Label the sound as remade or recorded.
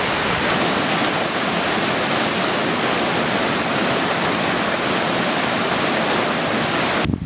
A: recorded